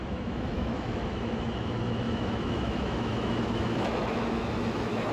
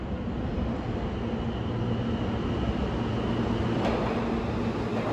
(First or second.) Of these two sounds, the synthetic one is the first